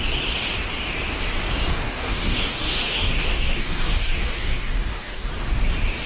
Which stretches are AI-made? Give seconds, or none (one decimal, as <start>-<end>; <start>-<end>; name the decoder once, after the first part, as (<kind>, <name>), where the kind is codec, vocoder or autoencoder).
1.6-5.3 (codec, DAC)